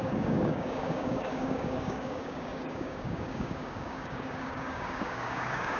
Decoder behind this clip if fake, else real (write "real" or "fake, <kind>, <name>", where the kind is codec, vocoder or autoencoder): fake, codec, DAC